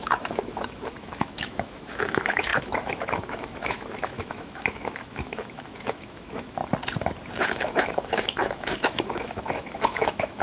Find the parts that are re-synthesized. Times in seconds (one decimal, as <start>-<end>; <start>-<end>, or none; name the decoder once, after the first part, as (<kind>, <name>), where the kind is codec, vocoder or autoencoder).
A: 0.0-6.6 (autoencoder, DAC-VAE); 7.4-10.4